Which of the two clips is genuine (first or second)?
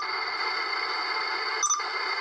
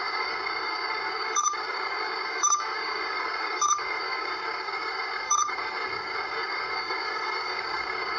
first